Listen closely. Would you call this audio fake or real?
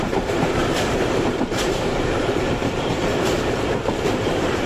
fake